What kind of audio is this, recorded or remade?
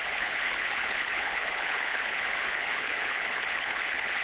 remade